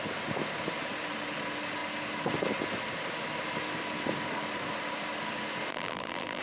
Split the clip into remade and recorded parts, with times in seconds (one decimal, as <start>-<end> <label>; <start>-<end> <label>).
0.0-5.7 recorded; 5.7-6.4 remade